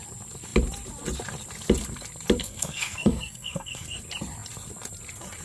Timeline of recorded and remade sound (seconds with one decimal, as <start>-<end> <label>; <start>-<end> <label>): 0.0-2.4 recorded; 2.4-4.0 remade; 4.0-5.4 recorded

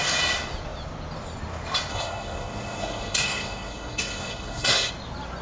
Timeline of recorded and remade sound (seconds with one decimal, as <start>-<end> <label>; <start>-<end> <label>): 0.0-1.9 recorded; 1.9-4.9 remade; 4.9-5.4 recorded

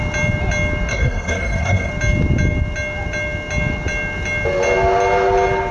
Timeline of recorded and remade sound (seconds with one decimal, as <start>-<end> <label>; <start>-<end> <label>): 0.0-0.9 recorded; 0.9-1.9 remade; 1.9-5.7 recorded

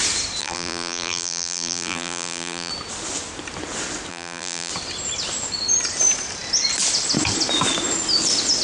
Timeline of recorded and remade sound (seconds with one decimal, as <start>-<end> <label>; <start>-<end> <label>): 0.0-0.4 recorded; 0.4-2.7 remade; 2.7-4.1 recorded; 4.1-4.7 remade; 4.7-8.6 recorded

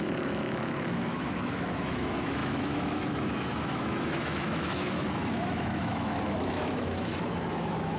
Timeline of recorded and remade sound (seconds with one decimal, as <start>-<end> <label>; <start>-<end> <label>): 0.0-8.0 remade

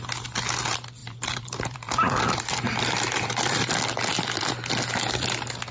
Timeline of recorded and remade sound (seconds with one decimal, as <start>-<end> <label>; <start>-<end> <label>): 0.0-1.0 recorded; 1.0-4.4 remade; 4.4-5.7 recorded

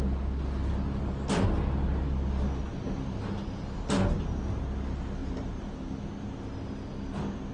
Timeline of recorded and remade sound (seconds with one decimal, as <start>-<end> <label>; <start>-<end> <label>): 0.0-5.2 recorded; 5.2-6.0 remade; 6.0-7.5 recorded